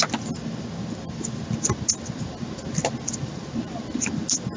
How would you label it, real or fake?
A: real